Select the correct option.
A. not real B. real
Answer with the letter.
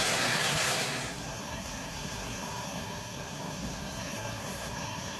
A